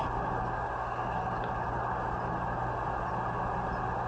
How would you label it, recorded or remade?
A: recorded